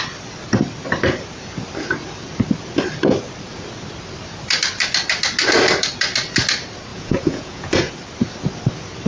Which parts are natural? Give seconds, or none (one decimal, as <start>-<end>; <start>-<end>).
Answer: 0.0-6.9; 7.9-9.1